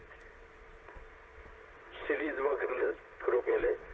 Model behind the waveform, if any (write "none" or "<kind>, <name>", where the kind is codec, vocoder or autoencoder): vocoder, WaveNeXt